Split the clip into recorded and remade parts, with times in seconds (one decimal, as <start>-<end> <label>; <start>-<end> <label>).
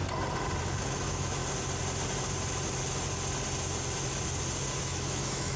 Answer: 0.0-0.6 recorded; 0.6-1.4 remade; 1.4-4.8 recorded; 4.8-5.6 remade